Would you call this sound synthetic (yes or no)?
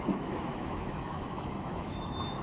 yes